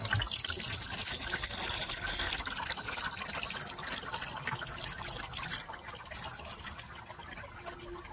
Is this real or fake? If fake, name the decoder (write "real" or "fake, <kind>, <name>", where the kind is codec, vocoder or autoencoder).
real